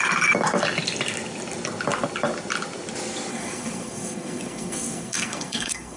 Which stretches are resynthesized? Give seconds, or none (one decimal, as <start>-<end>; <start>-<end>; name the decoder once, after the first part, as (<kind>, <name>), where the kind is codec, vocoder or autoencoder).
3.3-6.0 (codec, SNAC)